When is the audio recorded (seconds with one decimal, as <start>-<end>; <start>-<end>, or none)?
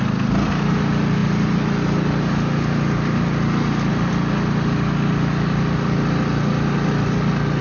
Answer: 0.0-7.6